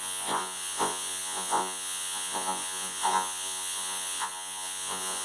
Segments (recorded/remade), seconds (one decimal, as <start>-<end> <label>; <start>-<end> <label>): 0.0-5.2 remade